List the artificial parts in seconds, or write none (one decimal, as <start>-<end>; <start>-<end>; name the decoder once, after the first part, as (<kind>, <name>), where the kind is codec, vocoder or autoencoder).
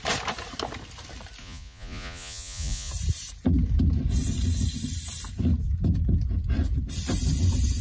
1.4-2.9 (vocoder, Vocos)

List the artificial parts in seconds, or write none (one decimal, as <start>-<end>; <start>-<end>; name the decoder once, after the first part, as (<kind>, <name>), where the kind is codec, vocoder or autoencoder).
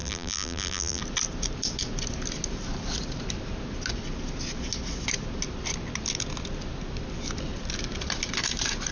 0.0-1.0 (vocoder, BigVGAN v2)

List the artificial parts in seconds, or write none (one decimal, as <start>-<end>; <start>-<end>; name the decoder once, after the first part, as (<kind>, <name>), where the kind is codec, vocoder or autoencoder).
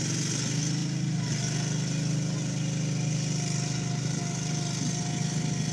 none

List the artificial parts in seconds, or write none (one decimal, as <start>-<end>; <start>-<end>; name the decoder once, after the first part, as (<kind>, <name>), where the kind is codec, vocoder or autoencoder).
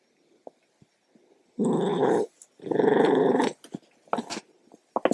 none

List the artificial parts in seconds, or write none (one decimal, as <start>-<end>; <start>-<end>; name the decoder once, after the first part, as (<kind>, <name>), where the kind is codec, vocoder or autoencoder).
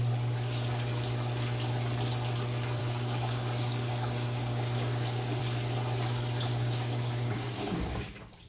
2.8-5.4 (codec, DAC); 6.5-8.5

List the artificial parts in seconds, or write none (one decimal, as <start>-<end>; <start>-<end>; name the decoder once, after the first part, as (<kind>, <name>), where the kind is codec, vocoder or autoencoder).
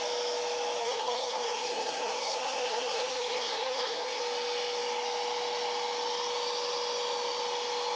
0.8-4.2 (codec, SNAC)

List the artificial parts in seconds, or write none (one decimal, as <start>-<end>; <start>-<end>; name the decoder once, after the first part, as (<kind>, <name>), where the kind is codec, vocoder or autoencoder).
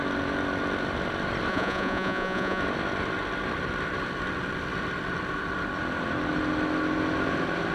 1.5-2.6 (vocoder, Vocos)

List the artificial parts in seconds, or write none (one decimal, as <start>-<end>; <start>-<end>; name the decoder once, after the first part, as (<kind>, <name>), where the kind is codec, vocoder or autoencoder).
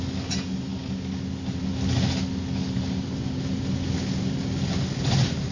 none